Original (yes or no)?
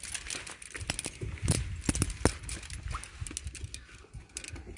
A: yes